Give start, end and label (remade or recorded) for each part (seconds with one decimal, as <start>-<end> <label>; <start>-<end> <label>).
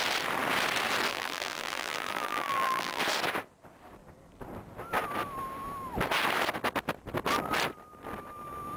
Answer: 0.0-1.1 recorded; 1.1-3.0 remade; 3.0-8.8 recorded